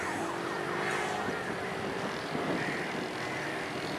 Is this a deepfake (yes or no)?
no